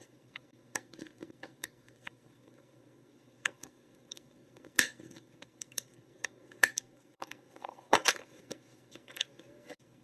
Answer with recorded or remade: remade